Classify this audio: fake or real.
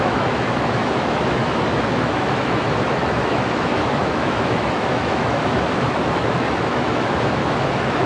fake